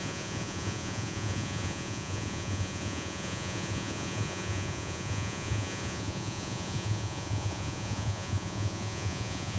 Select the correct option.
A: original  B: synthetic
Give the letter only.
B